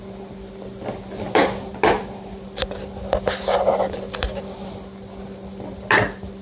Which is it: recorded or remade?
recorded